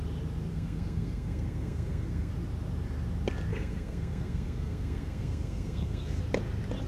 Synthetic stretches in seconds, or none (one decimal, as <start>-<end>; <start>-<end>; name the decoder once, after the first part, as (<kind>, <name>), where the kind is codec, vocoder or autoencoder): 0.5-2.3 (codec, SNAC); 3.5-6.2